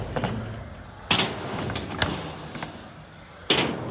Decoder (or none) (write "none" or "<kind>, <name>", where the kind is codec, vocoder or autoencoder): none